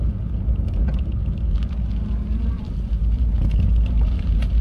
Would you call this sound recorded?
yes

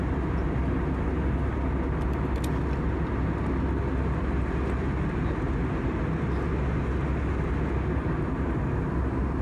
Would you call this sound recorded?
yes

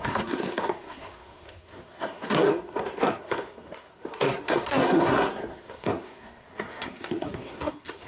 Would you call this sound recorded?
no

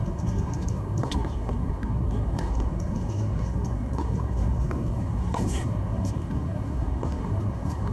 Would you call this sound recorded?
no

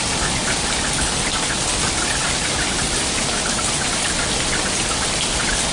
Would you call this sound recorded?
yes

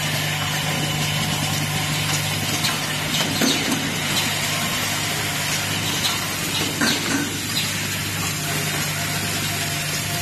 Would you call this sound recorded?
yes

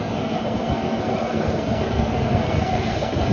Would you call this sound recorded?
no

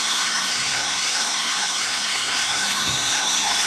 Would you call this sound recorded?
no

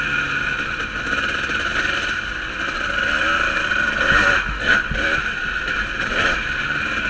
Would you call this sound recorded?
yes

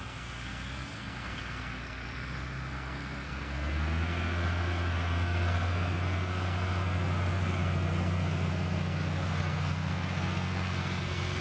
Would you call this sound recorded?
no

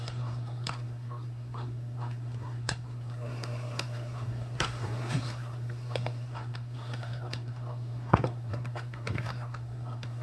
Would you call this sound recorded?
no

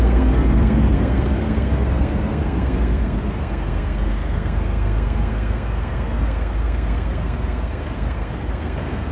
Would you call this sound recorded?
no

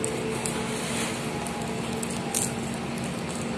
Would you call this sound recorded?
yes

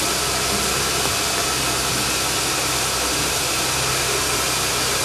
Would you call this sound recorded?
yes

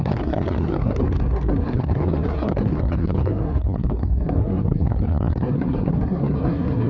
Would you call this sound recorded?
no